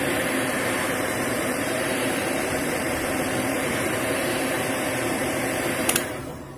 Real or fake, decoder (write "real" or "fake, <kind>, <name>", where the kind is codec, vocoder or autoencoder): fake, vocoder, BigVGAN v2